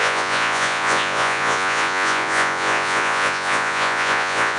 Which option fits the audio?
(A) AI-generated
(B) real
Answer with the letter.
A